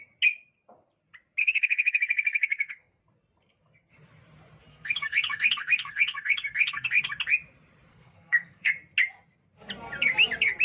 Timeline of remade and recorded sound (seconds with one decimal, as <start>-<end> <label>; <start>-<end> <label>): 0.0-1.4 recorded; 1.4-3.0 remade; 3.0-4.7 recorded; 4.7-7.1 remade; 7.1-7.9 recorded; 7.9-8.7 remade; 8.7-10.6 recorded